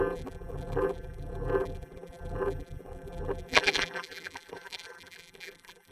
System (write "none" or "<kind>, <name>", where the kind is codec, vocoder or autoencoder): vocoder, BigVGAN v2